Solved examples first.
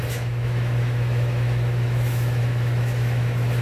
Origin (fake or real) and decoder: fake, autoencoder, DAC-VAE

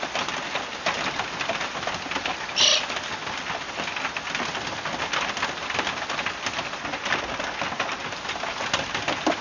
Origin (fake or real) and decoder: real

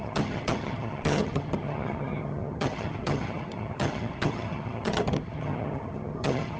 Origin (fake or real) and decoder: fake, vocoder, HiFi-GAN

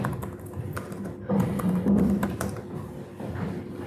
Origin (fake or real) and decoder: real